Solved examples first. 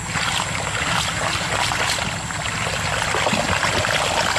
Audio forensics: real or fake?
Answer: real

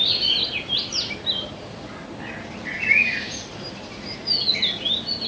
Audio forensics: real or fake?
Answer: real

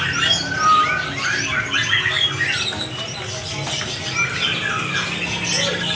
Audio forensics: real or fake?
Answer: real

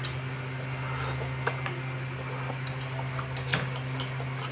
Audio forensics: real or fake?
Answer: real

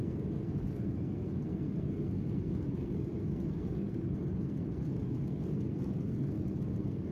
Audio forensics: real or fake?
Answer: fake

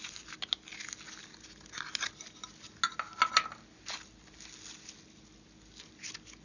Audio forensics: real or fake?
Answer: real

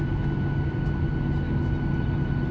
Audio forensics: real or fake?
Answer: real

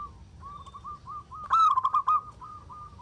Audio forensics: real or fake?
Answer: real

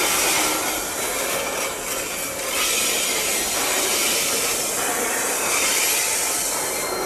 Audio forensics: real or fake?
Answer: real